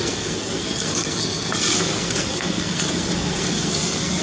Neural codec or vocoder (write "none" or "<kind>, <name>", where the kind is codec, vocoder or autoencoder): codec, SNAC